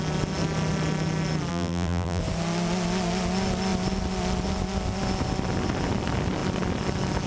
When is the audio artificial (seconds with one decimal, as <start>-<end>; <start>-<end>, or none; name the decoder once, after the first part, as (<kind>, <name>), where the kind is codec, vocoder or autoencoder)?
1.5-2.2 (vocoder, BigVGAN v2)